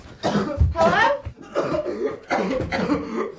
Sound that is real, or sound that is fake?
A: real